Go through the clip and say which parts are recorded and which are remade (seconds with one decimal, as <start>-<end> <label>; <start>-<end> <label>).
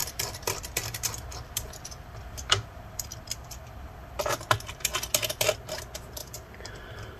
0.0-4.3 remade; 4.3-6.2 recorded; 6.2-7.2 remade